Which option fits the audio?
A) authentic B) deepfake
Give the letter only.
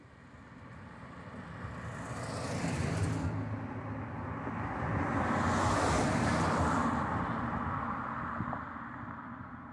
A